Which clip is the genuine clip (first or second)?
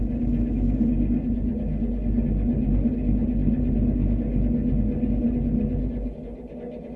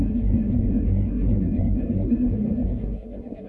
first